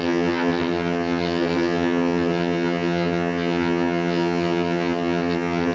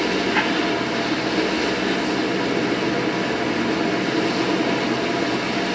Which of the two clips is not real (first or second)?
first